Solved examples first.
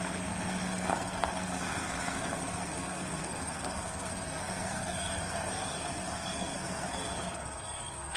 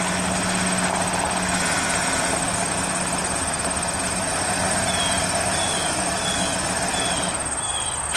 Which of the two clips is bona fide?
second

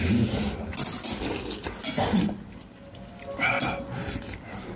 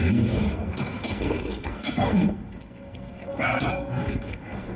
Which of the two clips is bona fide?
first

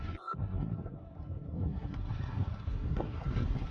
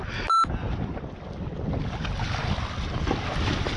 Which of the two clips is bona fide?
second